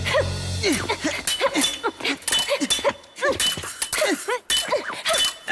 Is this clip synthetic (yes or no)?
no